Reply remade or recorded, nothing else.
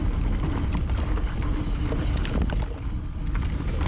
remade